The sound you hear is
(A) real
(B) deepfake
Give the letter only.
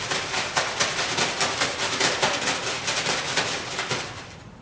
B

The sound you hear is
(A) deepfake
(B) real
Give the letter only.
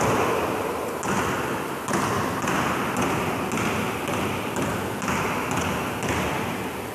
B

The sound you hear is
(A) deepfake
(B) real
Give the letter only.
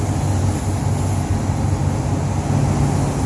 B